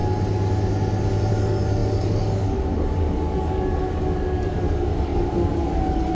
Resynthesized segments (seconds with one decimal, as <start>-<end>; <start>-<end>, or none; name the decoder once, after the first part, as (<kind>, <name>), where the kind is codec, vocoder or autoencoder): 1.3-6.1 (codec, DAC)